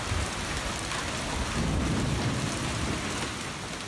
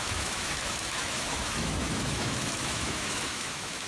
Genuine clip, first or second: first